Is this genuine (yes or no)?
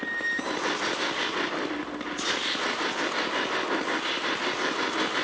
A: yes